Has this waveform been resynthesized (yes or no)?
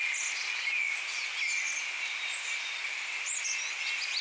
no